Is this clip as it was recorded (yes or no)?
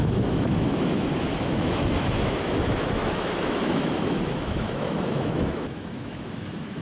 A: no